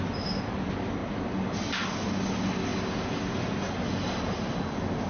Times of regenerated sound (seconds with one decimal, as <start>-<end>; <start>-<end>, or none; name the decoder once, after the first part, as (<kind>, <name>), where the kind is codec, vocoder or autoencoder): none